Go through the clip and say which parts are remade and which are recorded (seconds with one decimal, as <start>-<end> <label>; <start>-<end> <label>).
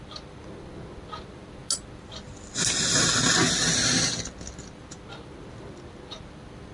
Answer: 0.0-6.7 recorded